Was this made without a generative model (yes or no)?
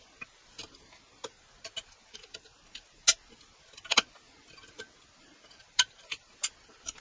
yes